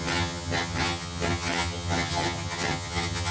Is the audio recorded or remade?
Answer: remade